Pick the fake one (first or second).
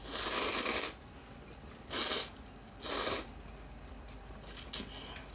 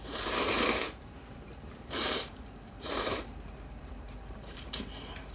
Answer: second